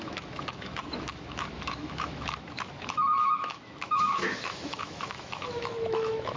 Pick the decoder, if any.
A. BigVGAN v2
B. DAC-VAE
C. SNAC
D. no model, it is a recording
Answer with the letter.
B